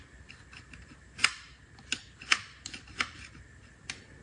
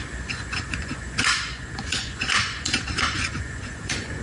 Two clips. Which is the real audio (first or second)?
first